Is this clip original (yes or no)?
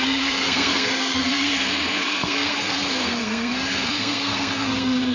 no